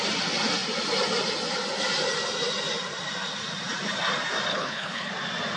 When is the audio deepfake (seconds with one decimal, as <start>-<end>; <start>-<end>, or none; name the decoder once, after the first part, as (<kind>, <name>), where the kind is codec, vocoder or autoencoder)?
4.5-5.1 (codec, HILCodec)